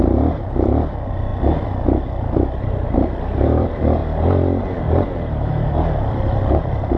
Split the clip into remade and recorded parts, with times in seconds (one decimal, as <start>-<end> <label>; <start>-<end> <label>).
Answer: 0.0-4.0 remade; 4.0-4.8 recorded; 4.8-5.5 remade; 5.5-6.1 recorded; 6.1-7.0 remade